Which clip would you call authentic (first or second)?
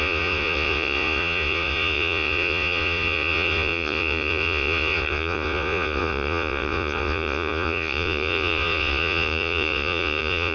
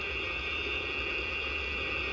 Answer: second